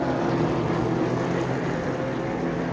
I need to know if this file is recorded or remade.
recorded